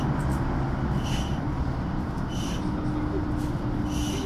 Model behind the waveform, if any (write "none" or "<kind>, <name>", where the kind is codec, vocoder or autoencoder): none